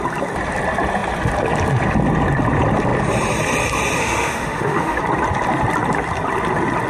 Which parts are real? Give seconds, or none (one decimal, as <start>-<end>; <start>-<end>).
0.0-4.0; 5.0-6.9